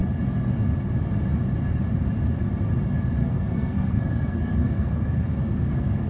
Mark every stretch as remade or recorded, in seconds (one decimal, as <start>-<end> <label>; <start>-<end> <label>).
0.0-3.2 recorded; 3.2-6.1 remade